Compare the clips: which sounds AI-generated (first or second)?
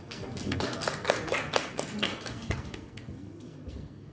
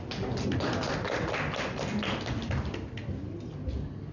first